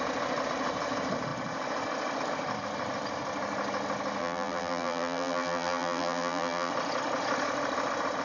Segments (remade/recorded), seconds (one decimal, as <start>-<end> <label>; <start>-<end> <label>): 0.0-4.2 recorded; 4.2-6.7 remade; 6.7-8.2 recorded